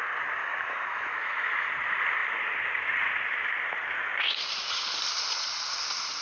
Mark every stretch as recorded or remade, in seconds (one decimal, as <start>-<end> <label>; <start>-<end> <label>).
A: 0.0-0.4 recorded; 0.4-1.7 remade; 1.7-6.2 recorded